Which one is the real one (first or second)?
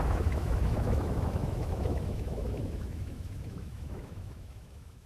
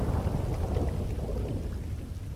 second